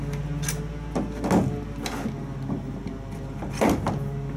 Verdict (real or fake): real